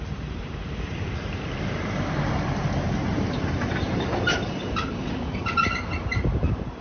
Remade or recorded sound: remade